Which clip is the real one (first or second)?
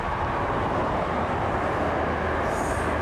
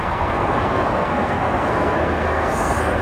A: first